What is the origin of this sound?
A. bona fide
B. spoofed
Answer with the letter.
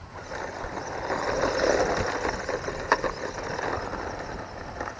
A